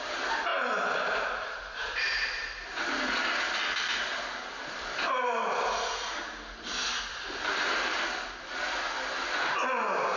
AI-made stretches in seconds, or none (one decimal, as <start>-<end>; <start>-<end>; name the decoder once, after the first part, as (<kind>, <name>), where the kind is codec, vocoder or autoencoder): 0.5-2.8 (vocoder, BigVGAN v2); 4.1-5.7; 7.1-7.9